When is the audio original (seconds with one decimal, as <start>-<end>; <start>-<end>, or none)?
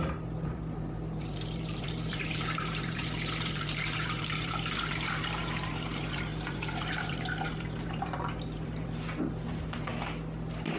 9.9-10.8